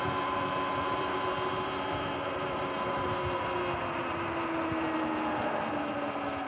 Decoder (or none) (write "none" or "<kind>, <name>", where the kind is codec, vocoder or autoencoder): none